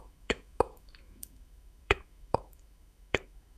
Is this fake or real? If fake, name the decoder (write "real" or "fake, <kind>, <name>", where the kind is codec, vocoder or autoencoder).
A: fake, autoencoder, DAC-VAE